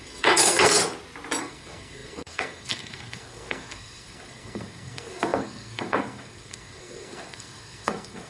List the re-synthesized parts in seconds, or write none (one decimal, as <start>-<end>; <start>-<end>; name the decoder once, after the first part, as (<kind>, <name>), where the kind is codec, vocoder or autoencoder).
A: 0.0-0.8 (codec, SNAC); 1.4-8.3